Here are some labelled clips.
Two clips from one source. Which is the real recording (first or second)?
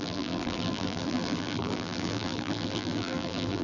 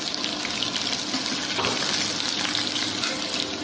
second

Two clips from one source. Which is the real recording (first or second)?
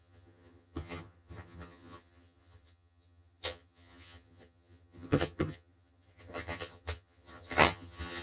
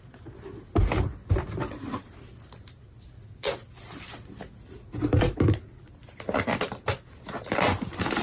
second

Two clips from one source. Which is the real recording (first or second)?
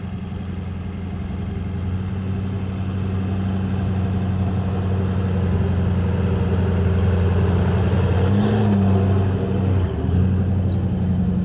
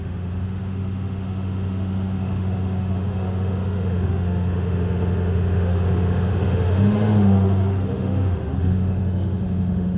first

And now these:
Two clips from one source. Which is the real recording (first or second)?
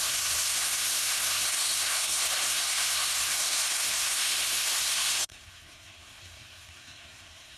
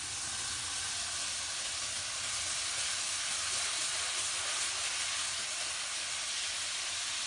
second